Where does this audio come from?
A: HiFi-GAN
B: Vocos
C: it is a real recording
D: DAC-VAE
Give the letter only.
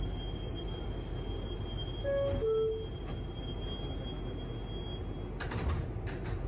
C